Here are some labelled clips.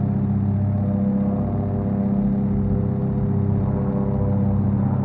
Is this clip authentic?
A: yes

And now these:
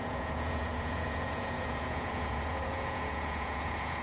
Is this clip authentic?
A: no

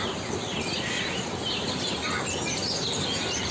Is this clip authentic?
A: yes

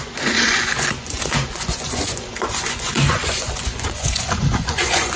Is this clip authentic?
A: no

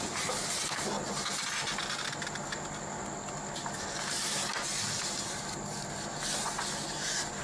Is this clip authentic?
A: yes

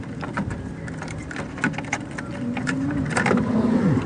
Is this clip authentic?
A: yes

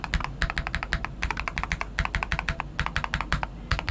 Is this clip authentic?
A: yes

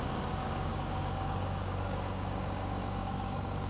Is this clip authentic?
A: no